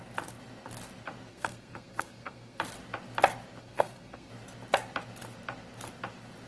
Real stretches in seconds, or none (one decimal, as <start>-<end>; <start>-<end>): 0.0-1.3; 2.6-3.6; 4.3-6.5